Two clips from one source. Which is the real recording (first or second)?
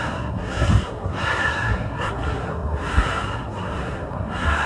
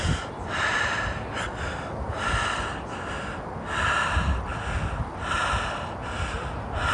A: second